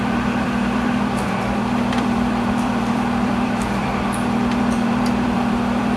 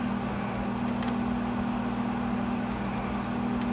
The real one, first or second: second